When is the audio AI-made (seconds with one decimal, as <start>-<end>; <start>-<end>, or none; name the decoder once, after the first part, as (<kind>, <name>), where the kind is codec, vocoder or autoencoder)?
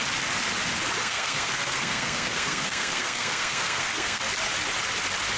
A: 1.0-4.2 (codec, SNAC)